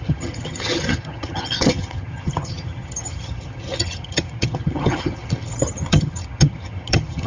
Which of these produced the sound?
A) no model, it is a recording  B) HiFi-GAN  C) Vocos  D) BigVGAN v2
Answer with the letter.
B